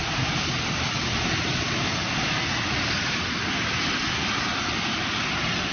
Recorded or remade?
recorded